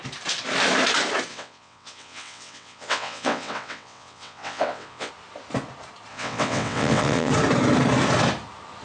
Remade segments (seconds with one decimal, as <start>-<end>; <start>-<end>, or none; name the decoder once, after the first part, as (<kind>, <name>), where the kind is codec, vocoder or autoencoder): 1.3-5.1 (vocoder, WaveNeXt); 6.1-7.3